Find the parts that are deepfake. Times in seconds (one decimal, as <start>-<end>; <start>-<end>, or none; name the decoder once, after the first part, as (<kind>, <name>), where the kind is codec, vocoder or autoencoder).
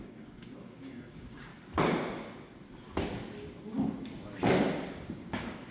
0.0-1.5 (codec, DAC); 4.9-5.7